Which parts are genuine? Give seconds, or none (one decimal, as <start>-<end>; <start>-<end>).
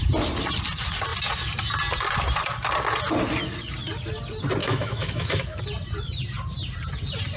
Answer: 0.0-4.6; 5.6-7.4